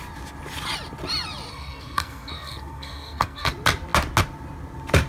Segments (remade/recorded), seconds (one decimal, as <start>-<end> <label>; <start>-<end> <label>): 0.0-1.5 recorded; 1.5-3.5 remade; 3.5-5.1 recorded